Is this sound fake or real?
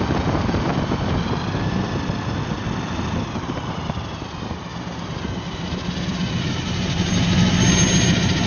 real